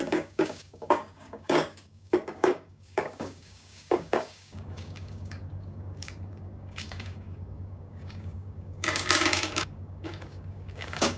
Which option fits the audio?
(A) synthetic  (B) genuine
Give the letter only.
A